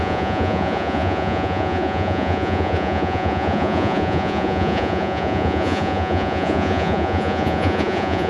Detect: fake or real fake